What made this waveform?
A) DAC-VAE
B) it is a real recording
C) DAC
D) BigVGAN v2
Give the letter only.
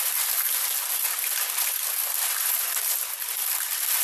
B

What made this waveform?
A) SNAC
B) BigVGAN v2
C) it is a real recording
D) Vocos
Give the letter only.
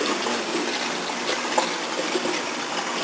C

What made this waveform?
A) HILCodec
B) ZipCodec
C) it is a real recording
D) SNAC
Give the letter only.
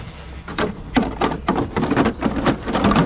C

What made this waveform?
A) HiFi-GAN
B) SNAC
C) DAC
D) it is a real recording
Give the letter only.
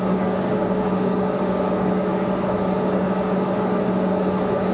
C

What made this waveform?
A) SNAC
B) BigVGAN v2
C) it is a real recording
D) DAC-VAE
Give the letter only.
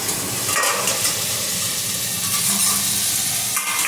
C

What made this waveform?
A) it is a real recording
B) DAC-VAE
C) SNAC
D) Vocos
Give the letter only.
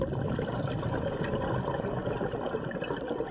A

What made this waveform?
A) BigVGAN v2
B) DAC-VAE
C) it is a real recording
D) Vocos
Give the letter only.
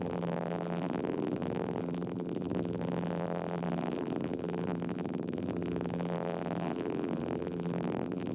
A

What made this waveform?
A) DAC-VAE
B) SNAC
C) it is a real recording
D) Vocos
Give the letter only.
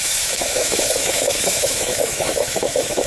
A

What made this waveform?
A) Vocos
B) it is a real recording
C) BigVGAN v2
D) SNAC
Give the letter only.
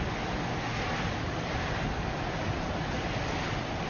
B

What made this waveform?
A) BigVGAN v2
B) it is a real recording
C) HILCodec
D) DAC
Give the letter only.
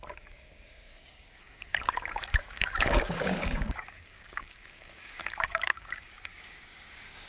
D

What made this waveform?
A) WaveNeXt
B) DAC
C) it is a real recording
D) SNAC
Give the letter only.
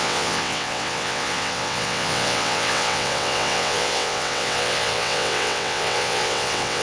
A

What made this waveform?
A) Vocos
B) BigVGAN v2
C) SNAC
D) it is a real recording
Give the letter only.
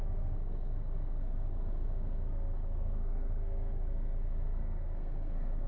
C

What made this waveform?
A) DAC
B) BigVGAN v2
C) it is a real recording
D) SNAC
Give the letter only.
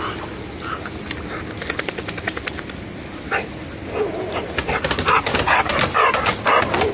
C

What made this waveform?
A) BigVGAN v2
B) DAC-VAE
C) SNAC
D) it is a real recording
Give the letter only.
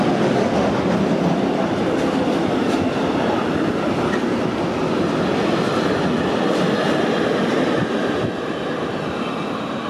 D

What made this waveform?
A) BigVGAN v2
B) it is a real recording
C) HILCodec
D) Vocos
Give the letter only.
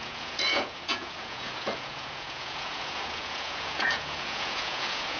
D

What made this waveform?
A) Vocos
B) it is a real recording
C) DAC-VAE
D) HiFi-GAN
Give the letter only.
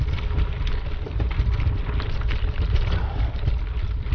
B